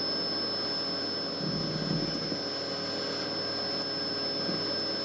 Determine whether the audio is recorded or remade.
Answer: recorded